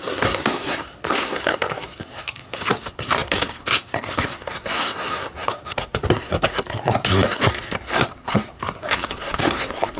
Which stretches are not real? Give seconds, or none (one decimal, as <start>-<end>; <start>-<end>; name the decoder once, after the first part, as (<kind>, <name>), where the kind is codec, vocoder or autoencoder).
0.0-10.0 (codec, SNAC)

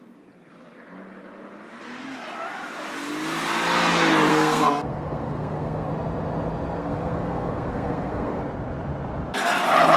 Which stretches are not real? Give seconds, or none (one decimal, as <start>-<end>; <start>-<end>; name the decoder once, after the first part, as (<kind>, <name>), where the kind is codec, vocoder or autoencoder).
4.3-5.9 (codec, SNAC); 6.8-8.4

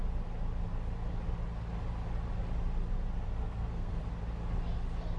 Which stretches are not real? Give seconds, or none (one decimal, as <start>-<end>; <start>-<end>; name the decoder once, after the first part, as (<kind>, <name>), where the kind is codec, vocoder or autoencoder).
3.4-4.0 (codec, SNAC)

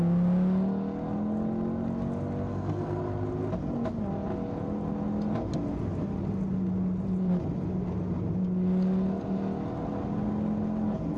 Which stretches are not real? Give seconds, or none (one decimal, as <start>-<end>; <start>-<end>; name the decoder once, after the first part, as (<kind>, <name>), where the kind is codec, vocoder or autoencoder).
2.5-3.0 (codec, SNAC)

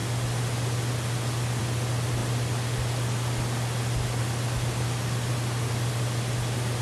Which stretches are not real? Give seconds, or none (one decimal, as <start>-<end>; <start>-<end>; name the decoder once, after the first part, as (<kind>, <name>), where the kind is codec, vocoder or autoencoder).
none

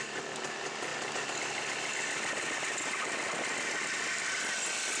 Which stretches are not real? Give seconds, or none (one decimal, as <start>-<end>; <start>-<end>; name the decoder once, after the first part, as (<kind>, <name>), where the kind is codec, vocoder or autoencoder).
none

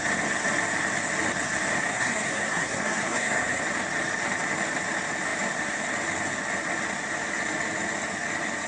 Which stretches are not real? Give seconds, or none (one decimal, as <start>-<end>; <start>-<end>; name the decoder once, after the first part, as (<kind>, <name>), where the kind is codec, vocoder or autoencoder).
1.9-3.6 (codec, SNAC)